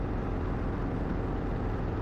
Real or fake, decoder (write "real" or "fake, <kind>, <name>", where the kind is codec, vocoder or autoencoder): real